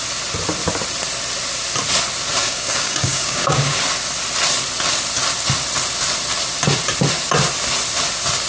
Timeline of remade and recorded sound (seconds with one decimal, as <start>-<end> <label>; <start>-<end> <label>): 0.0-2.4 recorded; 2.4-3.8 remade; 3.8-8.5 recorded